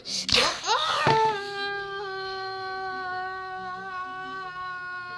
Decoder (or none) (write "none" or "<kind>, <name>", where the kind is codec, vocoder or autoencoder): none